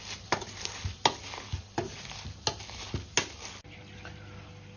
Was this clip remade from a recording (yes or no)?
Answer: no